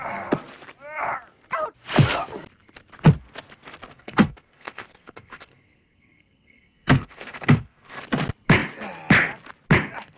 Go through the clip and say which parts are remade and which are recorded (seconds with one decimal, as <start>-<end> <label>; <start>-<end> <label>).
0.0-3.9 recorded; 3.9-8.0 remade; 8.0-10.2 recorded